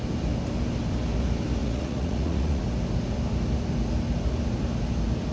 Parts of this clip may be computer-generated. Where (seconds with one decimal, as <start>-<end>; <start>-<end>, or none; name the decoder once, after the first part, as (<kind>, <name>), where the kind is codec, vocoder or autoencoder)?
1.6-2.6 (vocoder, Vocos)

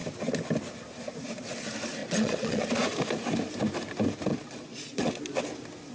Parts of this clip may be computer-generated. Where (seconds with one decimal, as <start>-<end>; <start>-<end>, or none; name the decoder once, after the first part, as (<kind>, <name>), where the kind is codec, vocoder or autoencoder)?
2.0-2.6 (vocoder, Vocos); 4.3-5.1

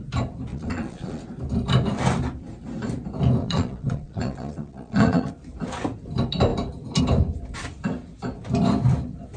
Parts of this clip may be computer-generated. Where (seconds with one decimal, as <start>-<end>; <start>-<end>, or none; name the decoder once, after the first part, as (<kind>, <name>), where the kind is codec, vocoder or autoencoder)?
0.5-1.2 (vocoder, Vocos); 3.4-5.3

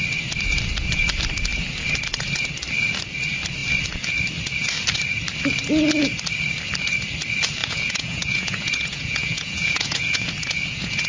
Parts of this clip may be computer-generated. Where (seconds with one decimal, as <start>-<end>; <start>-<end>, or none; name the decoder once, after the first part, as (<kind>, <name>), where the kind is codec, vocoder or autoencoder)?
7.6-11.1 (vocoder, Vocos)

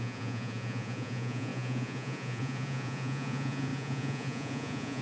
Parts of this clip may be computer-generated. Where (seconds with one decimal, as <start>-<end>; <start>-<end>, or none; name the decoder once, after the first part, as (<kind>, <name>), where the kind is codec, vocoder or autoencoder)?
0.0-5.0 (vocoder, Vocos)

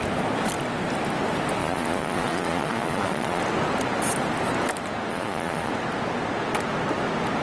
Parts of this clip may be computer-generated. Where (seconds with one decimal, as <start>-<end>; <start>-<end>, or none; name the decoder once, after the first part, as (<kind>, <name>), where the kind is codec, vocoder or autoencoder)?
1.6-3.4 (vocoder, Vocos); 5.1-5.7